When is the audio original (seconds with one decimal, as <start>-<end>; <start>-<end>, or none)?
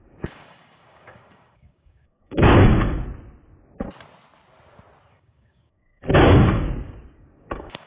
2.7-5.1